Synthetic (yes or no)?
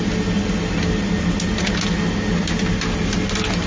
no